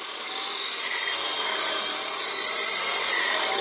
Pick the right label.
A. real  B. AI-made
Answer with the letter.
A